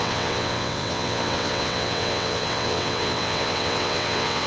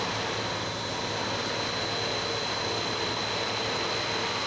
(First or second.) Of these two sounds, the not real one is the first